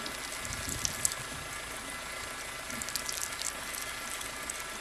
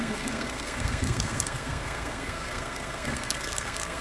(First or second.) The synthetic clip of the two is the second